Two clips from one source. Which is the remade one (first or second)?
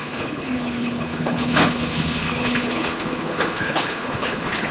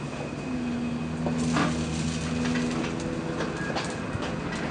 first